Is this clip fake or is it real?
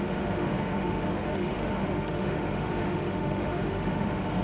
fake